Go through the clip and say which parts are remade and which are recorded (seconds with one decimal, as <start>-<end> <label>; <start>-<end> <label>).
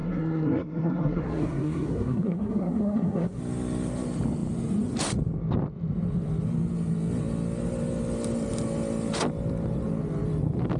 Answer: 0.0-3.4 remade; 3.4-10.8 recorded